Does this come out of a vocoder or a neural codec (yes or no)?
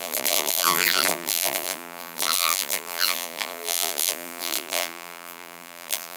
yes